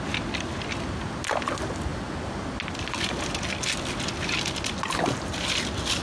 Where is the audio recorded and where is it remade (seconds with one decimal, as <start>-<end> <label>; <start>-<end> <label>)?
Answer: 0.0-6.0 recorded